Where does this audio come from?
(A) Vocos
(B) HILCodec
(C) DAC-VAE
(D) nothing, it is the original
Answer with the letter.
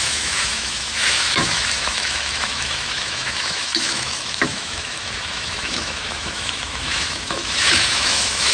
C